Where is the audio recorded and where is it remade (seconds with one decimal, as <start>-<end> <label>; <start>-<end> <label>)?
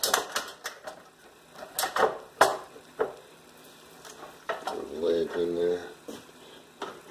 0.0-7.1 recorded